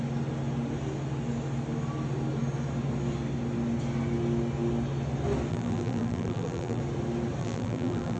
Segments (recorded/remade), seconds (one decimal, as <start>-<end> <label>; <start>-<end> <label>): 0.0-5.5 recorded; 5.5-6.8 remade; 6.8-7.4 recorded; 7.4-8.2 remade